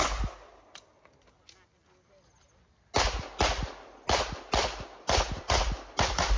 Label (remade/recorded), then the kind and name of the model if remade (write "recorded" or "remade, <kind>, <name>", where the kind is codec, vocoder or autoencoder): recorded